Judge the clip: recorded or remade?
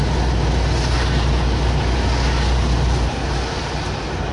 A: recorded